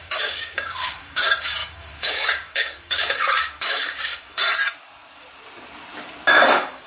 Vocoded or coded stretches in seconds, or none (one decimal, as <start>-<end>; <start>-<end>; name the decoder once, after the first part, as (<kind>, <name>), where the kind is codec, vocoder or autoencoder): 0.0-4.4 (codec, DAC); 6.3-6.9